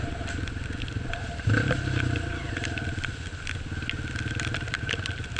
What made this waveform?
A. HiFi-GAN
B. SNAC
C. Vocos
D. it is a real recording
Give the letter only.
D